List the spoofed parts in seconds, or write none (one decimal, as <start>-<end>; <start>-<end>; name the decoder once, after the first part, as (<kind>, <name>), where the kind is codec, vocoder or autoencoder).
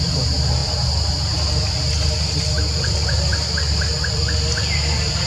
none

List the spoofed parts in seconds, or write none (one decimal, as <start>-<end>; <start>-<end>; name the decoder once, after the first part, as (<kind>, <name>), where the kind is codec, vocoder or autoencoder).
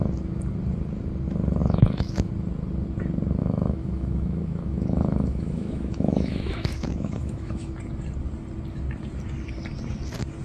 1.6-2.3 (autoencoder, DAC-VAE); 3.4-7.7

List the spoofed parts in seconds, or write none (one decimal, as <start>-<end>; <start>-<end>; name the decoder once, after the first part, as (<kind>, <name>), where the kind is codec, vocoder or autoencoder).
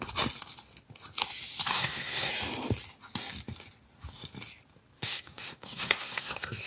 1.7-2.3 (codec, SNAC); 5.0-6.7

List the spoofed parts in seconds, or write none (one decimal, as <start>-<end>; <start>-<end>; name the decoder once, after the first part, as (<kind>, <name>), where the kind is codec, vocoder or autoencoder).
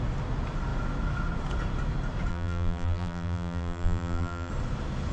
2.3-4.5 (vocoder, BigVGAN v2)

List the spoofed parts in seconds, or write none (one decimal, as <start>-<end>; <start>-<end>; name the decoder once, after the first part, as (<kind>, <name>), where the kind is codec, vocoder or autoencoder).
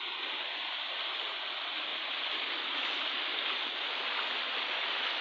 none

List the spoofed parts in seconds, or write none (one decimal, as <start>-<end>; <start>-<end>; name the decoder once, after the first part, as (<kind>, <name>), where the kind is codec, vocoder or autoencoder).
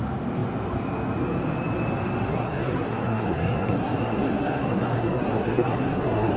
2.3-6.4 (codec, SNAC)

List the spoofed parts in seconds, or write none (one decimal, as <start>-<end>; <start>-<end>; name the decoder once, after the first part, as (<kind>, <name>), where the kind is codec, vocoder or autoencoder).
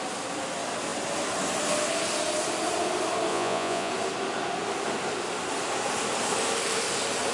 3.3-3.9 (vocoder, Vocos)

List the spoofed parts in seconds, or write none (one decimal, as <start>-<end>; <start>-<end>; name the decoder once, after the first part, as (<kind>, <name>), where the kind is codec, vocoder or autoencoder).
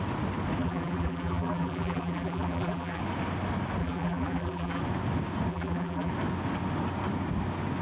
0.6-3.0 (vocoder, BigVGAN v2); 3.8-4.8; 5.5-6.1